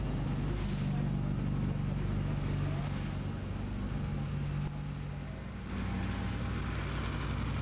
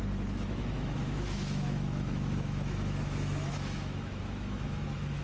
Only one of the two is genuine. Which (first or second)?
first